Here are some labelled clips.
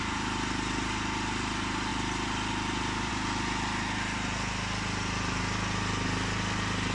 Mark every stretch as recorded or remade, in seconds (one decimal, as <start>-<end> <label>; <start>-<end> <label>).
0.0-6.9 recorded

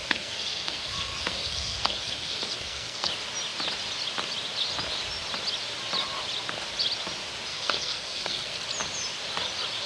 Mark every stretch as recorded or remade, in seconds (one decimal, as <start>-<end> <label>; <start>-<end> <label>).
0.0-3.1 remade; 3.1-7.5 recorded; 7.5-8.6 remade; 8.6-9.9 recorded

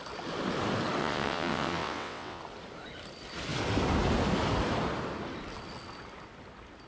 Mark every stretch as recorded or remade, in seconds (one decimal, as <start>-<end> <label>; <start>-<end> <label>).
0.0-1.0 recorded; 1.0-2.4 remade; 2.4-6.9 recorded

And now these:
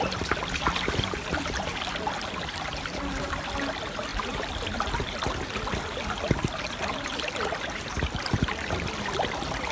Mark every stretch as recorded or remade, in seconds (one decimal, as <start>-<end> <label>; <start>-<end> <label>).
0.0-9.7 recorded

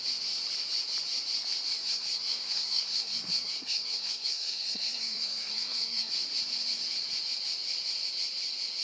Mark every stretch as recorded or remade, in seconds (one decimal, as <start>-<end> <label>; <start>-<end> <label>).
0.0-1.7 recorded; 1.7-6.1 remade; 6.1-8.8 recorded

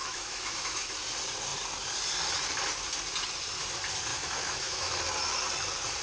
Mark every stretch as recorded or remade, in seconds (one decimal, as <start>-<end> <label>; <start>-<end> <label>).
0.0-0.9 remade; 0.9-4.1 recorded; 4.1-5.0 remade; 5.0-6.0 recorded